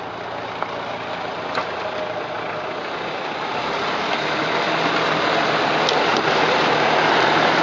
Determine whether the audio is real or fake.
real